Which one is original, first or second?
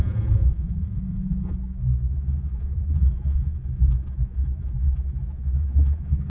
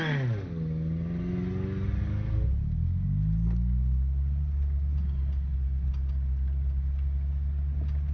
second